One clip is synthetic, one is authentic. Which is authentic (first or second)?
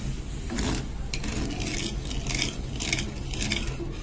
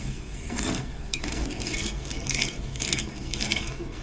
first